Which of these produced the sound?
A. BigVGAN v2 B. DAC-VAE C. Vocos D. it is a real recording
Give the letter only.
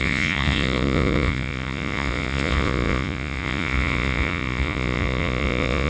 C